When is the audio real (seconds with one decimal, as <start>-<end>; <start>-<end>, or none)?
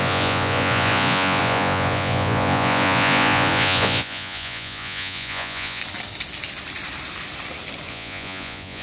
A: 5.8-7.9